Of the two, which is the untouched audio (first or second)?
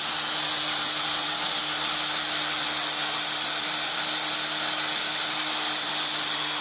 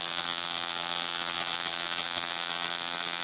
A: first